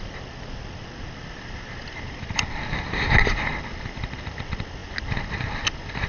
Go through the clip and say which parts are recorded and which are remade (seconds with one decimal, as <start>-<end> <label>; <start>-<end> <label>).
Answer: 0.0-6.1 recorded